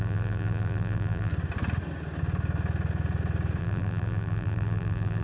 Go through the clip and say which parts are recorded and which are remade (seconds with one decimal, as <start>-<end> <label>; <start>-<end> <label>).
0.0-1.3 remade; 1.3-3.6 recorded; 3.6-5.2 remade